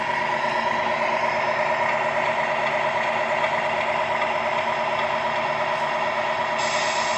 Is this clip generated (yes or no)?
no